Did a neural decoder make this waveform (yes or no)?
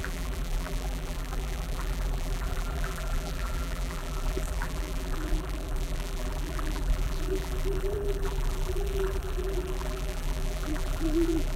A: yes